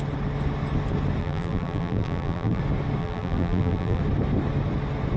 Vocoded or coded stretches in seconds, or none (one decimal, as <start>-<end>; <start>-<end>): 1.2-2.6; 3.0-4.0